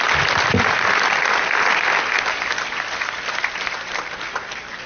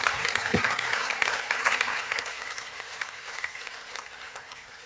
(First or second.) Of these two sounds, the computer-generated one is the second